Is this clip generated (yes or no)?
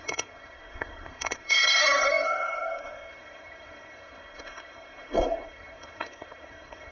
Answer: yes